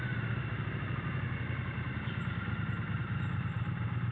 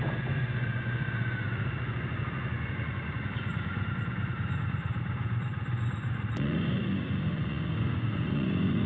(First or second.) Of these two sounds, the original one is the first